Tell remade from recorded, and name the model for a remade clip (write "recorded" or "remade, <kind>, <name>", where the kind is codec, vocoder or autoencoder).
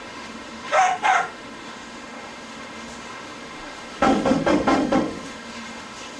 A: remade, autoencoder, DAC-VAE